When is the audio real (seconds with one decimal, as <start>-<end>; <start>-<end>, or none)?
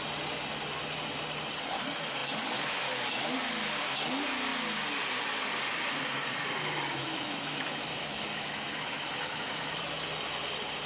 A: 0.0-7.0; 9.8-10.9